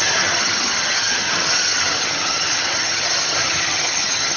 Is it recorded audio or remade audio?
remade